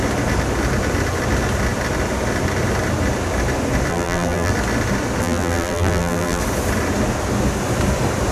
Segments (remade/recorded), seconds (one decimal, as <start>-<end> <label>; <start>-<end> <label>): 0.0-3.9 recorded; 3.9-4.5 remade; 4.5-5.2 recorded; 5.2-6.4 remade; 6.4-8.3 recorded